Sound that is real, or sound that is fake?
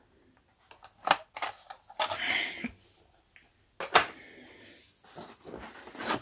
real